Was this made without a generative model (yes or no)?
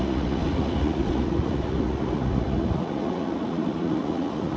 no